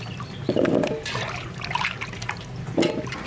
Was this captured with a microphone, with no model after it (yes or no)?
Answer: yes